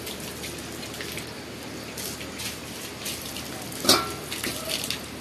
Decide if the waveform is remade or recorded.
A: recorded